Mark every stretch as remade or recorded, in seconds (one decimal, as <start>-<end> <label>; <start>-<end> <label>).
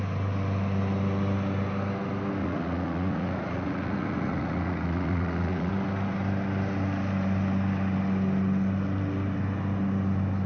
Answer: 0.0-2.4 recorded; 2.4-5.7 remade; 5.7-10.5 recorded